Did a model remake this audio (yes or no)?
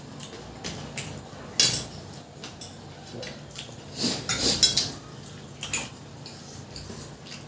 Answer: no